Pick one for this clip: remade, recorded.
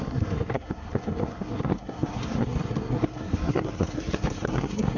remade